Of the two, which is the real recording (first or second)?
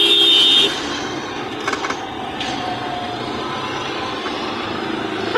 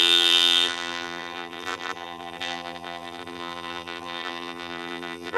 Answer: first